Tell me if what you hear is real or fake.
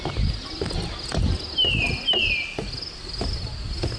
real